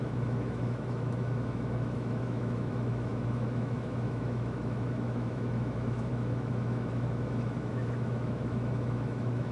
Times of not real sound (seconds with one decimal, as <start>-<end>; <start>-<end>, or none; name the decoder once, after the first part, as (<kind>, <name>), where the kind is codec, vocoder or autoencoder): 0.0-9.5 (autoencoder, DAC-VAE)